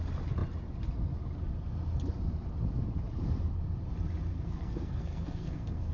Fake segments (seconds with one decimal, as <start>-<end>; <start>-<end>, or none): 4.3-5.9